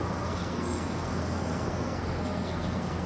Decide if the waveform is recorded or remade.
remade